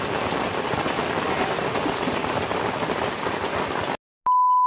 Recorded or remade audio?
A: recorded